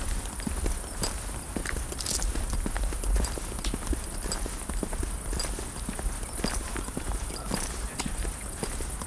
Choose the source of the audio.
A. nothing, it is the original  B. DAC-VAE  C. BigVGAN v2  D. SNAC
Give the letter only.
A